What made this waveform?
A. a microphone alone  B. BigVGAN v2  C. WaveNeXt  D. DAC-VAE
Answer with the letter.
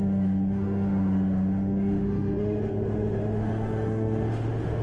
D